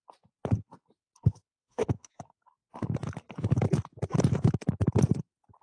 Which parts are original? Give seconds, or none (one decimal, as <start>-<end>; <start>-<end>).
0.0-1.6; 2.2-5.6